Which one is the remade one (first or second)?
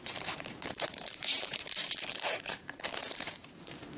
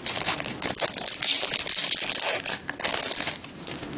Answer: first